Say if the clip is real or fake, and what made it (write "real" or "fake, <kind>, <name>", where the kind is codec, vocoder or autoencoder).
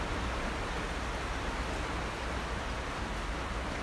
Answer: real